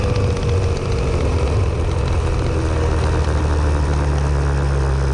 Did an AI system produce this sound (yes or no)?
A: no